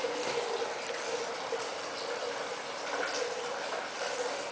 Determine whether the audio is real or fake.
real